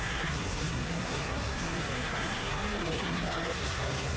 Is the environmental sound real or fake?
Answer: fake